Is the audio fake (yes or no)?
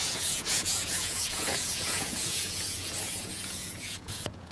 yes